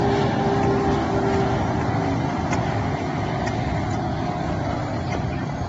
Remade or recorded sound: recorded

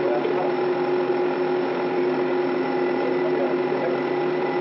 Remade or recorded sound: recorded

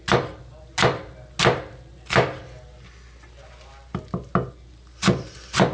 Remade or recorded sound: recorded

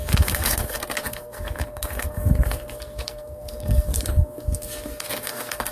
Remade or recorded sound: remade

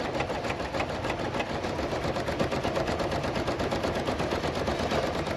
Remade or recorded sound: recorded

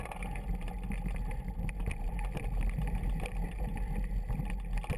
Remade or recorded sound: recorded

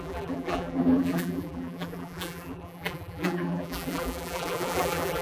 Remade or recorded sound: remade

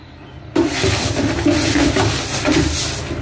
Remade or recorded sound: recorded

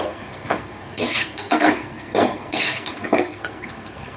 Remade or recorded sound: remade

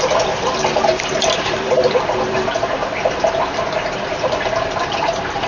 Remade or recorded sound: remade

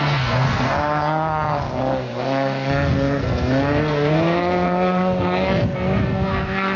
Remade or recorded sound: remade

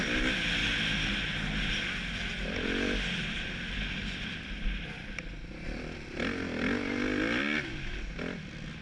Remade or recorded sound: recorded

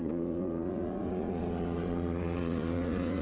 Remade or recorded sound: remade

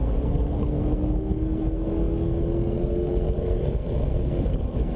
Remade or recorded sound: remade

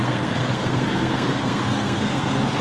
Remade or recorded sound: remade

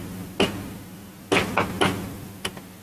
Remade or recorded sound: recorded